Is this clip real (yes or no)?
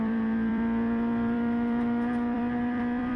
no